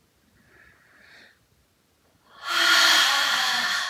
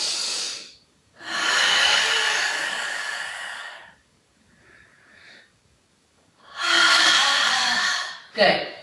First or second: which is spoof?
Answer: second